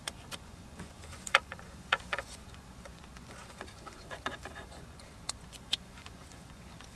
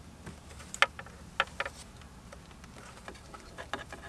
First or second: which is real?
second